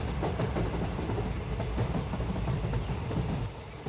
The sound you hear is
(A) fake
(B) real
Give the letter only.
B